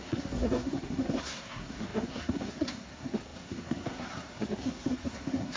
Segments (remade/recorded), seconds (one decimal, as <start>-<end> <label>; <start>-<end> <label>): 0.0-5.6 remade